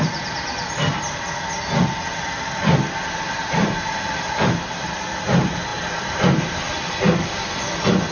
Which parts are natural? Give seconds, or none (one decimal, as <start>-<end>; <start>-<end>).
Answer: 0.0-5.7; 6.6-8.1